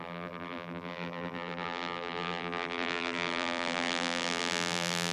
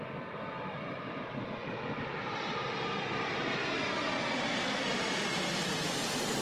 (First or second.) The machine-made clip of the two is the first